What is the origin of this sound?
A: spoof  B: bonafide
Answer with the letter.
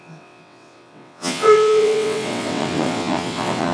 A